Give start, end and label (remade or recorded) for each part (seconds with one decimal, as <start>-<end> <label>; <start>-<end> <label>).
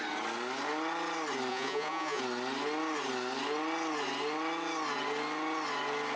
0.0-1.5 recorded; 1.5-2.2 remade; 2.2-6.2 recorded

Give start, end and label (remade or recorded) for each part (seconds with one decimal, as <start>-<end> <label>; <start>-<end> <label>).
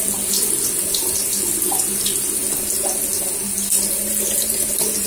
0.0-5.1 recorded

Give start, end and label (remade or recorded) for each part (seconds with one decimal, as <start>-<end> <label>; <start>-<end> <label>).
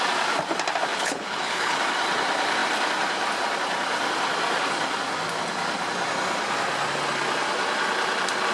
0.0-0.9 recorded; 0.9-1.8 remade; 1.8-8.5 recorded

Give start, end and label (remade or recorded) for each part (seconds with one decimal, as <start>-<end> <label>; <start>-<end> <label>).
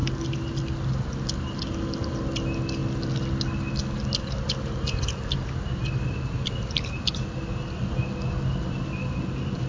0.0-9.7 recorded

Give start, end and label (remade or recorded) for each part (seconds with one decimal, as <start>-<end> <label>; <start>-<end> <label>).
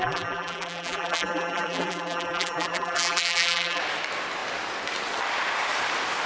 0.0-3.8 remade; 3.8-6.3 recorded